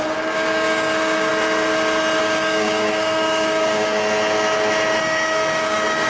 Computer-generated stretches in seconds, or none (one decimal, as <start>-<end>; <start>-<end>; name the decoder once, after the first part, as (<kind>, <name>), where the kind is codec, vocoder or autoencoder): 0.0-1.3 (codec, DAC); 2.2-4.0; 5.0-6.1